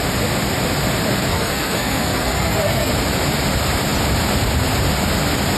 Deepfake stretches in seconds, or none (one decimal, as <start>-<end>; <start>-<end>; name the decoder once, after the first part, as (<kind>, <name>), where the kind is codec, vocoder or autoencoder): 1.3-2.9 (codec, SNAC)